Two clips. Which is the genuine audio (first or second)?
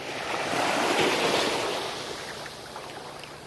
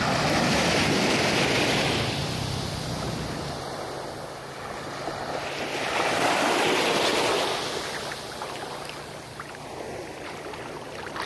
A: second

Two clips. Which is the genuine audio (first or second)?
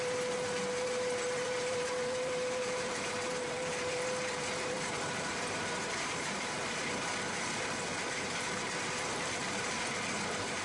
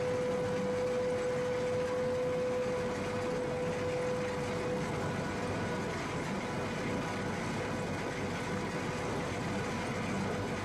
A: second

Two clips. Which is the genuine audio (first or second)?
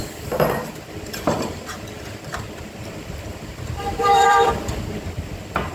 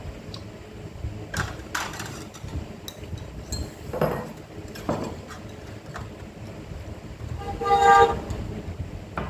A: second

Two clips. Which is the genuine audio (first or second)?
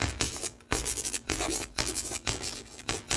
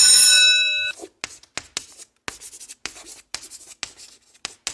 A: second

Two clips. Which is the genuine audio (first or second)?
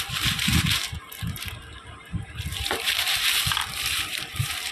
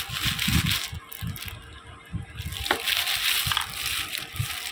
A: second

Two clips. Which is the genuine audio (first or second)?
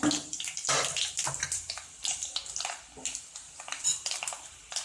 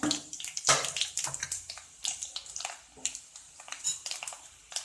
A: first